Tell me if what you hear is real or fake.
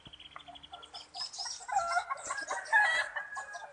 real